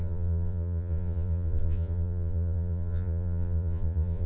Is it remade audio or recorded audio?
remade